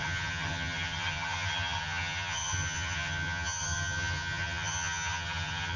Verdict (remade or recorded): remade